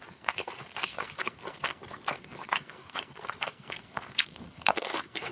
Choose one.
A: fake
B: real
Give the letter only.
A